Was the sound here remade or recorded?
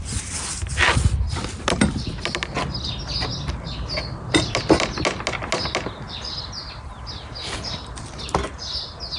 recorded